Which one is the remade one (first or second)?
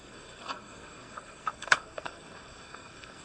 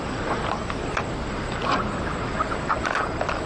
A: first